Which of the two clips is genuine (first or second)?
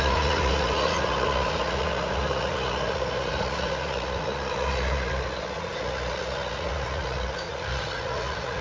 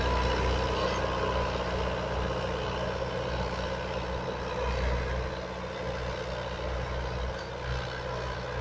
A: second